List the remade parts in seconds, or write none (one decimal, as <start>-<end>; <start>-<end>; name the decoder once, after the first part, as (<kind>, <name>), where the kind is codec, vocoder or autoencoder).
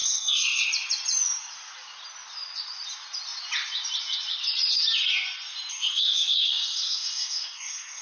0.0-0.7 (codec, SNAC); 5.7-8.0